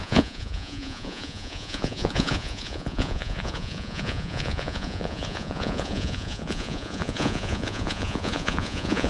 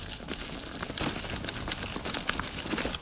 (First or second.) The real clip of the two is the second